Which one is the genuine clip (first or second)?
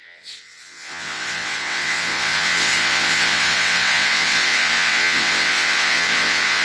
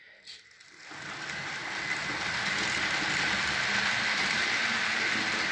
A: second